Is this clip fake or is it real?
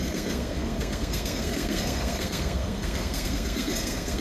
fake